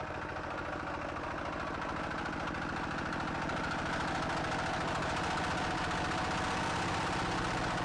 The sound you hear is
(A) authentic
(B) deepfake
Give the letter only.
A